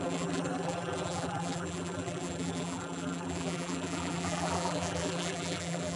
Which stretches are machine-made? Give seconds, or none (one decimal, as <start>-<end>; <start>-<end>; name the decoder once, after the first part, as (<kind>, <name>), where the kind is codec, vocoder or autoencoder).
0.0-6.0 (vocoder, BigVGAN v2)

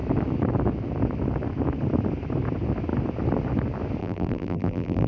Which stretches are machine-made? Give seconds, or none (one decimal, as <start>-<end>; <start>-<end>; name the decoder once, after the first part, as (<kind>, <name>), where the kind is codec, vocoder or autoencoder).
4.0-5.1 (vocoder, BigVGAN v2)

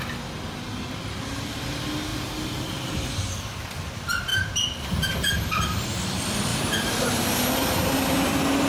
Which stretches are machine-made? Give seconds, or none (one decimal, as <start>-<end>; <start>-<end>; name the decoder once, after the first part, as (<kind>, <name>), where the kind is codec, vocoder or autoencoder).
2.1-3.7 (vocoder, BigVGAN v2); 4.3-5.3; 6.5-8.7

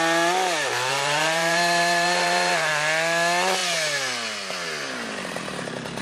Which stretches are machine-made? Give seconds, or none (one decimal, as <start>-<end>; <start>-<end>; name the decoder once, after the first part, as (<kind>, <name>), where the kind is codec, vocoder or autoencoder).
0.9-2.7 (vocoder, BigVGAN v2)

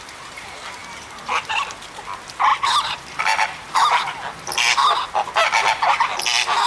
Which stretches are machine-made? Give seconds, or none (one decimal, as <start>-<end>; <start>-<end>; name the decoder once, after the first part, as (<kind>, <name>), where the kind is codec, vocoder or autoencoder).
0.8-1.6 (vocoder, BigVGAN v2); 2.5-3.2; 5.4-6.2